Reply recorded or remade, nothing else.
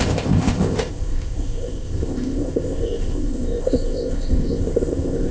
remade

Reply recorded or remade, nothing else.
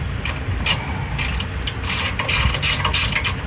recorded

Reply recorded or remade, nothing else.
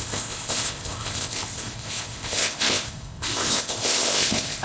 remade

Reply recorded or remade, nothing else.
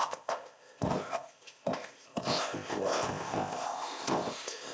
remade